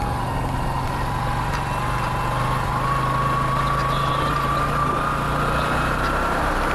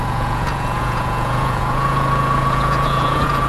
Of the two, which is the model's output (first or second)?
second